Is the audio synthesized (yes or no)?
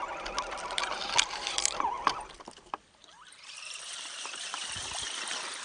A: yes